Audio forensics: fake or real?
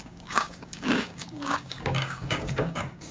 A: fake